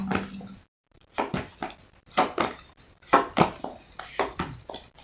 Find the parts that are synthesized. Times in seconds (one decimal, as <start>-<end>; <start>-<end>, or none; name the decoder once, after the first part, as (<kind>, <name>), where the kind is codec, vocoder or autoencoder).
none